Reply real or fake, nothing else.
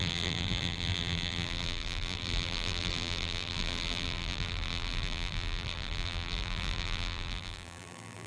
fake